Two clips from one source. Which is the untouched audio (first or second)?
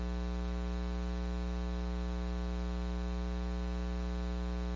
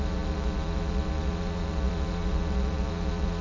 first